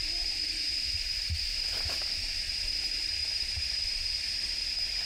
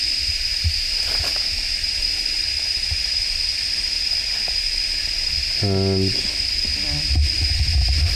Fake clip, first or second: first